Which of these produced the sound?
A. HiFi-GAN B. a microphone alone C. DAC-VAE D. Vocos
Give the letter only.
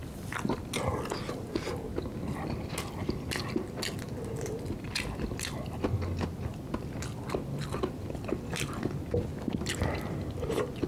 B